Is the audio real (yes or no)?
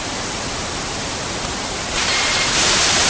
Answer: yes